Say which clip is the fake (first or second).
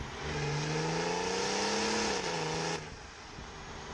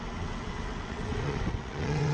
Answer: second